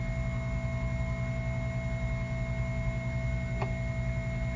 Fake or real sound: real